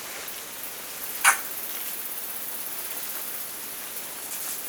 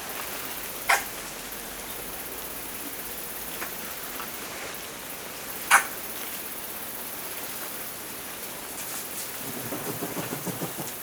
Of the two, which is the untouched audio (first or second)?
first